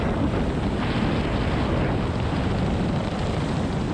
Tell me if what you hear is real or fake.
real